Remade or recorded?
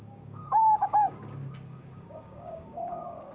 remade